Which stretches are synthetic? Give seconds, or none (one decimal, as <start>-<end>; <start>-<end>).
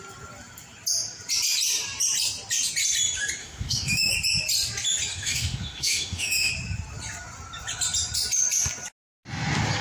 3.4-4.1; 5.1-6.5